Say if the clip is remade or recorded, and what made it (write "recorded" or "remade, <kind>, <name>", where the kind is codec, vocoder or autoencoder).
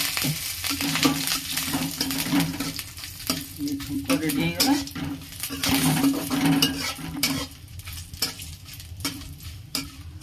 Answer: remade, vocoder, BigVGAN v2